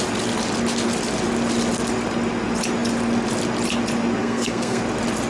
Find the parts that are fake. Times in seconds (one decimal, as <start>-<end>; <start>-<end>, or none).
4.2-4.8